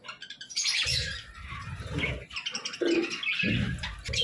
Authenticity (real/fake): real